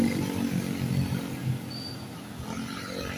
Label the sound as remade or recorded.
recorded